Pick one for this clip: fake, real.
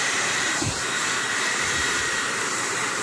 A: fake